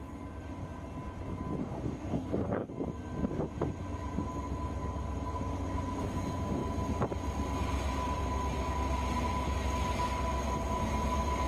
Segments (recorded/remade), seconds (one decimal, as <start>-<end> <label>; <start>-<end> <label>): 0.0-1.6 recorded; 1.6-2.7 remade; 2.7-11.5 recorded